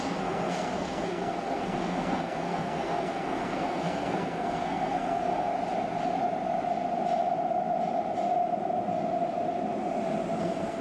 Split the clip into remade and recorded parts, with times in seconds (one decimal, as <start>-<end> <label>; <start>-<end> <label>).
0.0-5.5 remade; 5.5-10.4 recorded; 10.4-10.8 remade